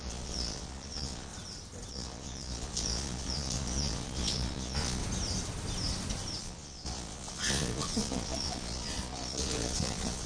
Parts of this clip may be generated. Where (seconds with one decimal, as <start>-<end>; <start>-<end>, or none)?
0.0-1.3; 1.9-5.0; 6.4-10.3